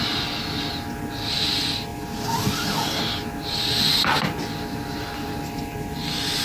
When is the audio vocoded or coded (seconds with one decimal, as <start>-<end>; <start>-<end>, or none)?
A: none